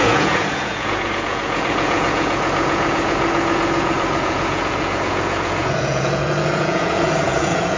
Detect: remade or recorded remade